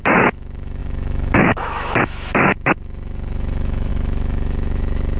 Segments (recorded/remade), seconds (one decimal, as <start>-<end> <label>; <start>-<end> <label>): 0.0-5.2 remade